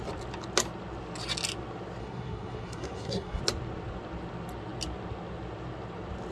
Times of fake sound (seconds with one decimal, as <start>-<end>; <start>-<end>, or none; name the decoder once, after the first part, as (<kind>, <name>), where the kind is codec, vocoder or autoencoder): 2.0-3.4 (codec, SNAC)